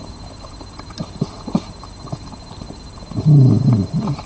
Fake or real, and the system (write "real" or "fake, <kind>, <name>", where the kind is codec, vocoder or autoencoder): real